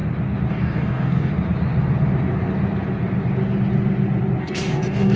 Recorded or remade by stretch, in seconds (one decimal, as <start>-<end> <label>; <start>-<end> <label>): 0.0-0.5 recorded; 0.5-1.3 remade; 1.3-4.4 recorded; 4.4-5.2 remade

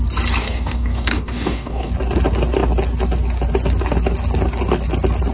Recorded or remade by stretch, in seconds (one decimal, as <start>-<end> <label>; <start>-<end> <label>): 0.0-0.4 recorded; 0.4-1.9 remade; 1.9-5.3 recorded

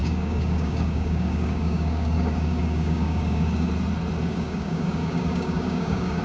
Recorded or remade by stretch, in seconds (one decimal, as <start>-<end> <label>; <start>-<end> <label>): 0.0-3.7 remade; 3.7-4.3 recorded; 4.3-6.2 remade

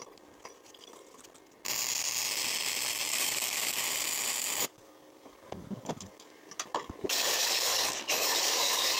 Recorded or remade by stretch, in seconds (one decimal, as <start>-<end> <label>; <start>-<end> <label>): 0.0-3.1 recorded; 3.1-3.8 remade; 3.8-4.6 recorded; 4.6-9.0 remade

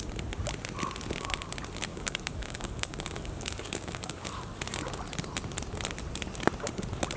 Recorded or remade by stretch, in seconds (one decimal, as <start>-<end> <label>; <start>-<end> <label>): 0.0-1.9 recorded; 1.9-4.6 remade; 4.6-7.2 recorded

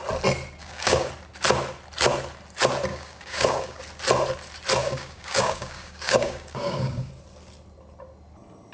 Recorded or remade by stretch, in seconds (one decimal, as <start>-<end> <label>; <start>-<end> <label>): 0.0-0.6 recorded; 0.6-1.1 remade; 1.1-2.9 recorded; 2.9-3.8 remade; 3.8-4.8 recorded; 4.8-7.1 remade; 7.1-8.7 recorded

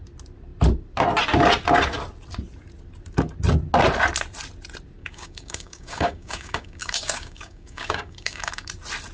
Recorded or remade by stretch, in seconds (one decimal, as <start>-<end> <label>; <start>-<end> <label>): 0.0-5.0 recorded; 5.0-8.7 remade; 8.7-9.1 recorded